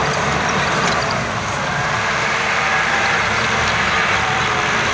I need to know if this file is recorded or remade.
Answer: remade